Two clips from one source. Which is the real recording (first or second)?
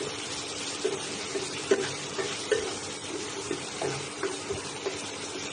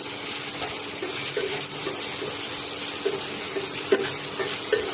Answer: second